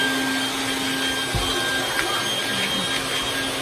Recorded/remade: recorded